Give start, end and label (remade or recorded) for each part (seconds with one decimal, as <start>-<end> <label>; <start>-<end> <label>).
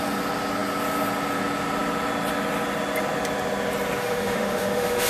0.0-4.0 recorded; 4.0-5.1 remade